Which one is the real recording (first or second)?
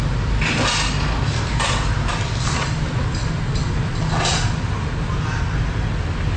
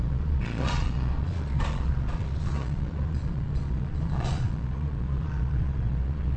first